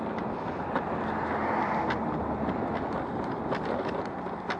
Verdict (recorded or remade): recorded